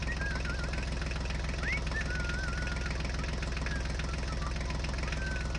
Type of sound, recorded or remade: recorded